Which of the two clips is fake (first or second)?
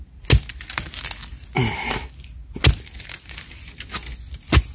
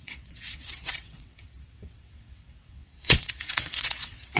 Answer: second